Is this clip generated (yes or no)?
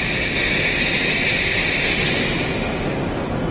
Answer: no